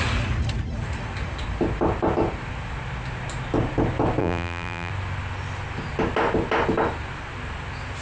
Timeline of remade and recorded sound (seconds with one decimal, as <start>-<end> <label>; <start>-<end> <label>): 0.0-4.2 recorded; 4.2-4.9 remade; 4.9-8.0 recorded